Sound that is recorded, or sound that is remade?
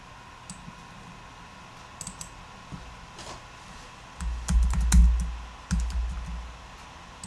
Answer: recorded